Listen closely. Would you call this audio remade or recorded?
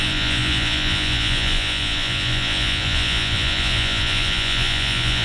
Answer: remade